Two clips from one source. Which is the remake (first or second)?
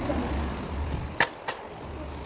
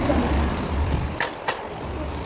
second